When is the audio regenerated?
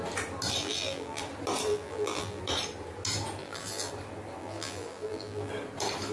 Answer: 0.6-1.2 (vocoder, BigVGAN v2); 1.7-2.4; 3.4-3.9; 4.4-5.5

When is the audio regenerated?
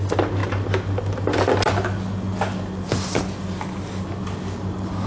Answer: none